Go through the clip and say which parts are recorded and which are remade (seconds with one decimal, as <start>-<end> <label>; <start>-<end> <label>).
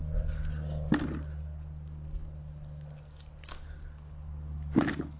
0.0-5.2 recorded